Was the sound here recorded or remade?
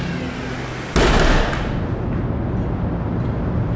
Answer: recorded